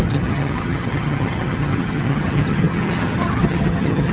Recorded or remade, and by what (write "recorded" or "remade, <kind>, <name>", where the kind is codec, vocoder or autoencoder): remade, vocoder, HiFi-GAN